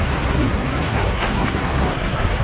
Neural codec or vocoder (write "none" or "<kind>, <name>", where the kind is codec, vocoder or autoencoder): codec, SNAC